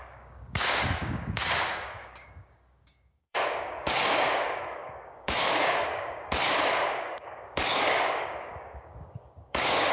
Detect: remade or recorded remade